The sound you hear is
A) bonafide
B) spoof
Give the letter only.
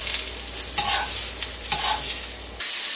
A